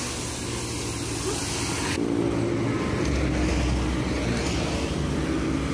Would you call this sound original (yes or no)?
yes